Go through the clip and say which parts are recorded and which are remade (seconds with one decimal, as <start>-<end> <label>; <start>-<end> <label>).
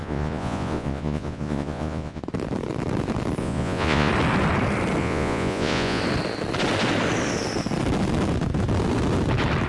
0.0-2.2 remade; 2.2-3.4 recorded; 3.4-4.1 remade; 4.1-5.0 recorded; 5.0-6.0 remade; 6.0-9.7 recorded